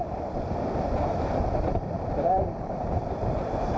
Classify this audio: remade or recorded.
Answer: remade